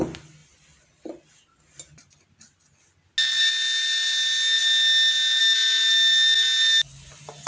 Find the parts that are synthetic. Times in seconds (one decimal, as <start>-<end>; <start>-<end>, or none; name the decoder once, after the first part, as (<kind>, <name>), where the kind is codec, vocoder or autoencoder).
none